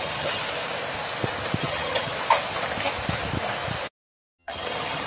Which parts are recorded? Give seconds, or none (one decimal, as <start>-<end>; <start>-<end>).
0.4-1.6; 2.1-4.4